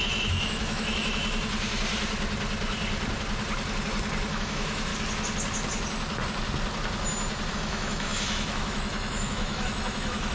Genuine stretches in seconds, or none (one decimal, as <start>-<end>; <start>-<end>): 1.2-4.3; 4.9-7.5